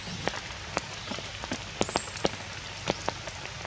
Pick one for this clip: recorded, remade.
recorded